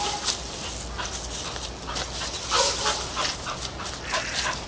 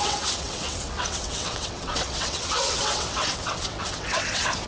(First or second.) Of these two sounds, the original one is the first